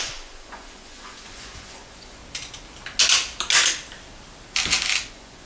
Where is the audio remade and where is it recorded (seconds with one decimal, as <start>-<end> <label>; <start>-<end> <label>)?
0.0-2.2 remade; 2.2-5.1 recorded; 5.1-5.5 remade